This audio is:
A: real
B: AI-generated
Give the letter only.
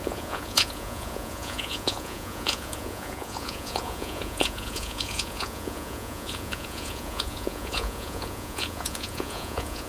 B